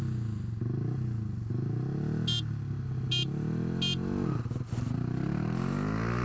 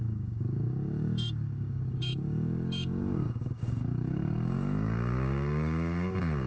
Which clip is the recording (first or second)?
first